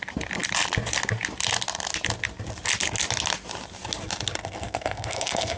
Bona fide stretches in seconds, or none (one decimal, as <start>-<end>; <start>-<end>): 0.0-4.4